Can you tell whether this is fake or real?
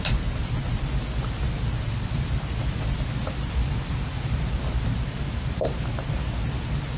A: real